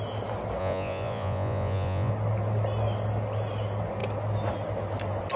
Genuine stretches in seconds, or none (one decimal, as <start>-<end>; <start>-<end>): 0.0-0.6; 2.1-5.4